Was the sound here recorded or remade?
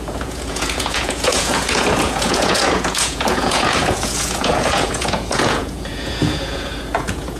remade